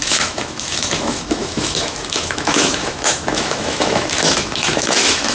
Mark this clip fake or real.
fake